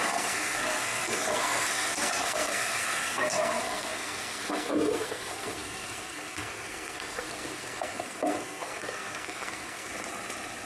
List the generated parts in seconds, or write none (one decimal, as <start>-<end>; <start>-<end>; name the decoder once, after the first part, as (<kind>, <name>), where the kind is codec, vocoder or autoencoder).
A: 0.0-9.9 (codec, SNAC)